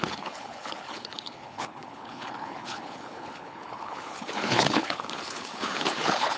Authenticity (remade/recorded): remade